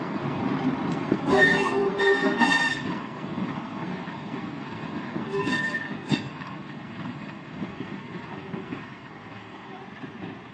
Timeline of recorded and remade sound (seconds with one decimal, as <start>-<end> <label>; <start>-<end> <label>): 0.0-0.4 remade; 0.4-0.9 recorded; 0.9-9.8 remade; 9.8-10.5 recorded